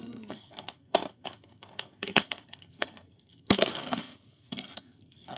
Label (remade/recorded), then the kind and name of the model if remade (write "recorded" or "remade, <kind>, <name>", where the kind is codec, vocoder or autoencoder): remade, codec, SNAC